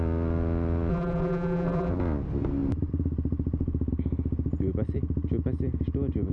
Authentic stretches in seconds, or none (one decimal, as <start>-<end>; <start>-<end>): 0.0-0.9; 1.9-6.3